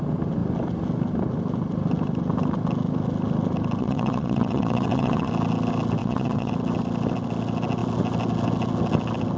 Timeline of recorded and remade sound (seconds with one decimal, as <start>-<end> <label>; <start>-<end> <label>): 0.0-3.8 recorded; 3.8-5.3 remade; 5.3-6.0 recorded; 6.0-6.5 remade; 6.5-9.4 recorded